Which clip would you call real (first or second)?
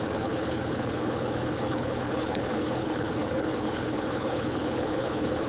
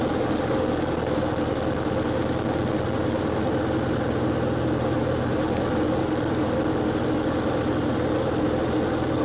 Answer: second